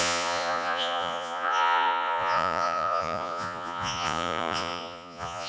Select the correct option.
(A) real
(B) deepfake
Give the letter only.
B